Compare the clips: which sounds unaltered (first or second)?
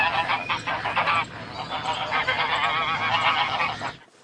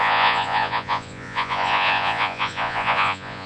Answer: first